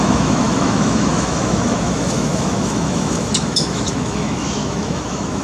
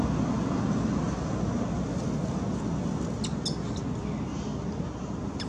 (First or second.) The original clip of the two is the second